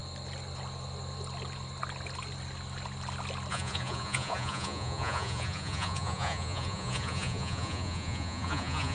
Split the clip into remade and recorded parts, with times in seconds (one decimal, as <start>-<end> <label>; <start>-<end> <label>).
0.0-3.5 recorded; 3.5-8.9 remade